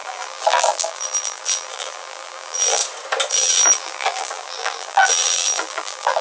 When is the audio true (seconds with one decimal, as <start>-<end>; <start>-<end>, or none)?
2.8-3.3